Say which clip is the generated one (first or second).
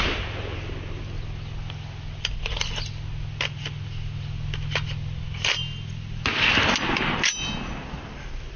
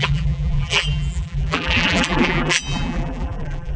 second